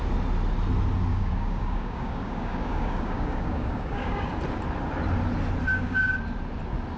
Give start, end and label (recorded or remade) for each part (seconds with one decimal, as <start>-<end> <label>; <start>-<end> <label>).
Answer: 0.0-1.1 recorded; 1.1-4.3 remade; 4.3-5.7 recorded; 5.7-6.2 remade; 6.2-7.0 recorded